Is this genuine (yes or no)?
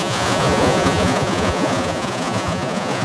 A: no